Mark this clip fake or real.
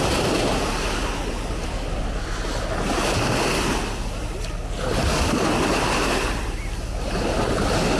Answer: real